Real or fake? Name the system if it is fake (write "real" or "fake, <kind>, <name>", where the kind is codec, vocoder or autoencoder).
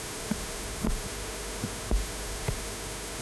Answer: fake, autoencoder, DAC-VAE